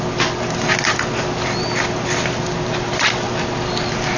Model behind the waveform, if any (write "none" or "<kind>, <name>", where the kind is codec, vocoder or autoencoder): none